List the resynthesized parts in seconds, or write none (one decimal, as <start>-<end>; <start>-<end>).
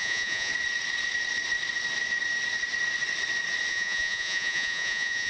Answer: 0.0-0.5; 3.7-5.3